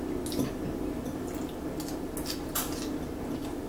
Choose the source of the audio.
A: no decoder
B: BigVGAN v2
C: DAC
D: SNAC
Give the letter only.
A